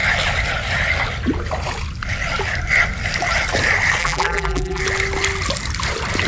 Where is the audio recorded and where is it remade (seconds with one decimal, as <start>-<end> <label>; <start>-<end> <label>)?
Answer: 0.0-4.0 recorded; 4.0-4.8 remade; 4.8-6.3 recorded